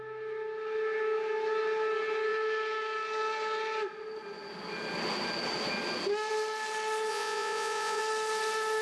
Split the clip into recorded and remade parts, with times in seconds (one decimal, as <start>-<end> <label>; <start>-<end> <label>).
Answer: 0.0-7.1 recorded; 7.1-8.0 remade; 8.0-8.8 recorded